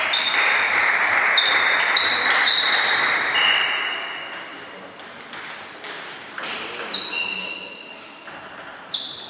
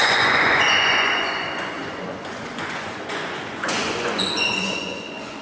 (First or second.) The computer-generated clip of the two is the second